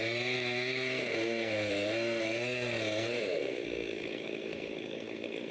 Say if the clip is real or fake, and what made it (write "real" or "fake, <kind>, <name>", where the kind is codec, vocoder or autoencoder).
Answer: fake, codec, SNAC